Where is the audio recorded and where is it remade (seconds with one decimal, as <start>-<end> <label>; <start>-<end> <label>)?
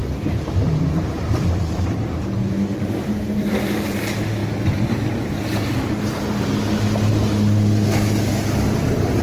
0.0-2.2 remade; 2.2-9.2 recorded